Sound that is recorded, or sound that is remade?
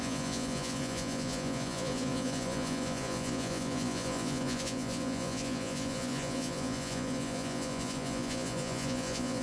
remade